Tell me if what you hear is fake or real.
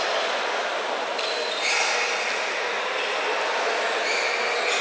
real